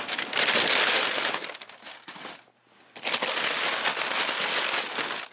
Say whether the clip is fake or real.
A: real